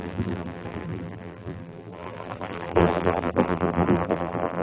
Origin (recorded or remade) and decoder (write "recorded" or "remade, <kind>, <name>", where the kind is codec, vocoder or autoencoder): remade, vocoder, BigVGAN v2